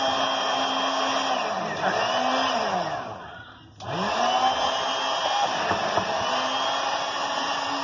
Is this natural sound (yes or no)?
yes